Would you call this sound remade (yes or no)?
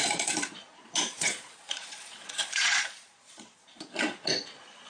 yes